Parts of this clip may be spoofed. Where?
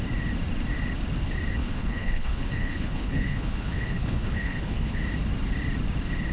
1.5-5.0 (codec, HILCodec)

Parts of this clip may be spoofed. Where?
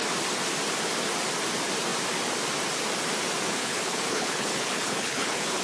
3.6-5.6 (codec, HILCodec)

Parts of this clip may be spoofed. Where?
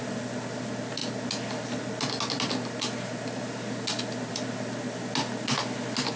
none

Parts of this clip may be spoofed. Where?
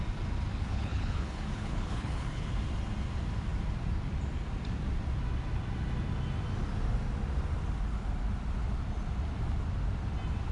0.5-2.5 (codec, HILCodec)